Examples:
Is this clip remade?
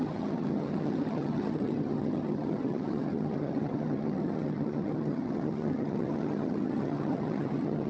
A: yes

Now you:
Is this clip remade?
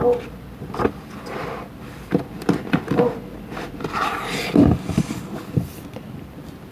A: no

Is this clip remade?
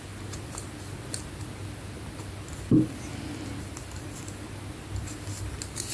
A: no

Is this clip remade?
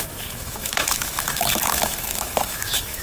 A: yes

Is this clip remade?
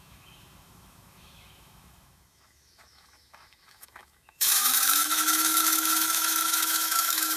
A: yes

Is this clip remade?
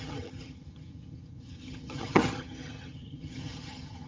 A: yes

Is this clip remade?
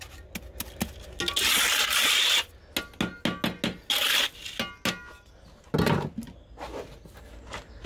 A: no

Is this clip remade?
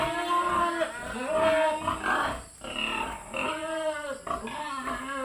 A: no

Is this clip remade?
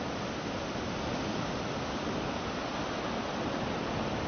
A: no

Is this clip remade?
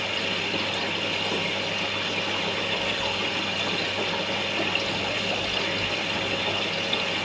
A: no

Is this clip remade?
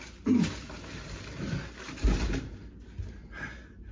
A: no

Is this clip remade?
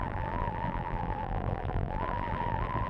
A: yes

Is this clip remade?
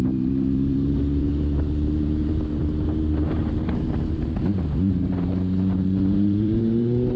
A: yes